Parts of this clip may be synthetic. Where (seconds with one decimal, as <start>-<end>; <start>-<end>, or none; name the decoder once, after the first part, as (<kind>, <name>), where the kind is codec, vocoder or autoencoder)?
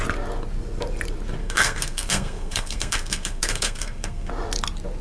1.4-4.3 (codec, SNAC)